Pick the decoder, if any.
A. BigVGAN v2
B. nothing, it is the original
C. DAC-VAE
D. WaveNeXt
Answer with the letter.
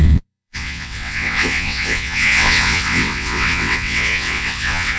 D